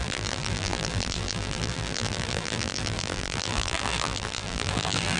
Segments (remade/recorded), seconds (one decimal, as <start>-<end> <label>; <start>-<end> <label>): 0.0-5.2 remade